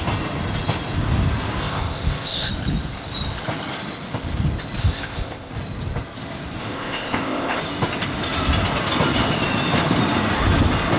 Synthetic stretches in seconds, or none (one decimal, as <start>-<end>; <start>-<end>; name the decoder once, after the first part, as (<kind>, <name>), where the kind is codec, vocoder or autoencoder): 1.6-2.5 (codec, ZipCodec); 4.8-5.5; 6.6-7.6